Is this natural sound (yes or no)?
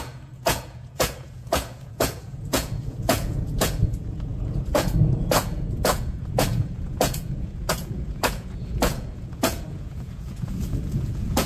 no